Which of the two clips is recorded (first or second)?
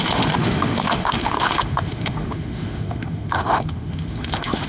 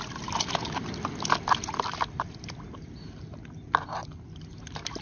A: second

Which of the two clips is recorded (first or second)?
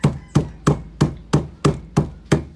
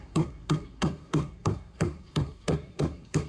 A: first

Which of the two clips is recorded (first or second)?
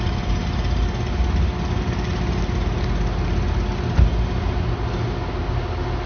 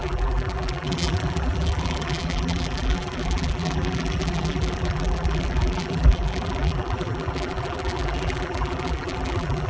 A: first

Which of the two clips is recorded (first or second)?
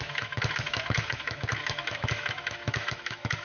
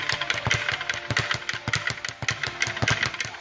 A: second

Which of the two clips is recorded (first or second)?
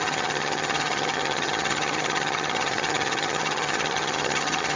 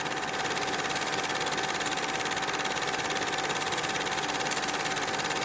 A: second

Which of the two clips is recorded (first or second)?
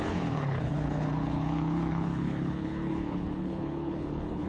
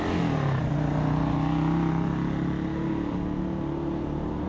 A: second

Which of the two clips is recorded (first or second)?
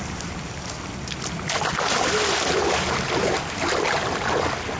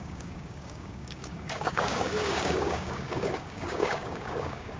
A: first